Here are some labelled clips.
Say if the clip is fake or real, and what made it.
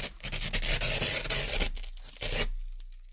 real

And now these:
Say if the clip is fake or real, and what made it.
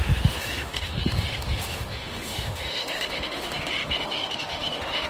fake, autoencoder, DAC-VAE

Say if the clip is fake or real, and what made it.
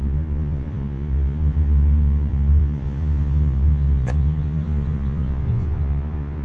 fake, vocoder, Vocos